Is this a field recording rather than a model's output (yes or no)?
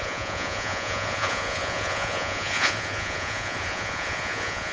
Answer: no